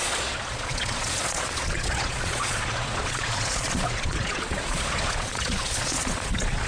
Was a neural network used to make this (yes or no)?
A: yes